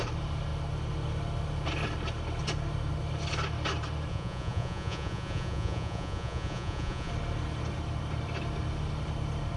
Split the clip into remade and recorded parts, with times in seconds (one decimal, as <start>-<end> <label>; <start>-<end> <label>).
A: 0.0-4.1 recorded; 4.1-7.1 remade; 7.1-9.6 recorded